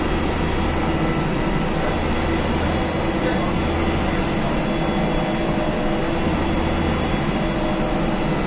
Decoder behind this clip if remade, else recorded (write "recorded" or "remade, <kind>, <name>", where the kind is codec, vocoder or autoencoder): recorded